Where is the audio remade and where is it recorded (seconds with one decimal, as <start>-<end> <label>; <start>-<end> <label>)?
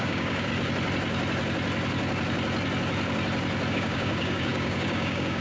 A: 0.0-0.5 remade; 0.5-3.7 recorded; 3.7-5.4 remade